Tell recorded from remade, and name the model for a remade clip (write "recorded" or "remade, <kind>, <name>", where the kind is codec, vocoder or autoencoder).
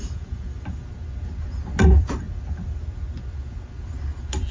recorded